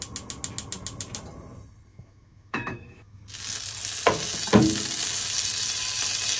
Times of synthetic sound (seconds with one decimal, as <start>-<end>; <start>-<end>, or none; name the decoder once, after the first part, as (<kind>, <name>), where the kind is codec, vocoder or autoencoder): 1.9-3.2 (autoencoder, DAC-VAE)